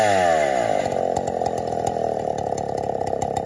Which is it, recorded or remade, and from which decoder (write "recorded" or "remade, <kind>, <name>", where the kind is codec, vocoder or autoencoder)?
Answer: recorded